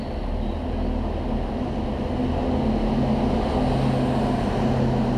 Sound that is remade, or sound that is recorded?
recorded